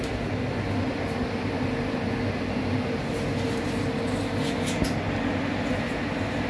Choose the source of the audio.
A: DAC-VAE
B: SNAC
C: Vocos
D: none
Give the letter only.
D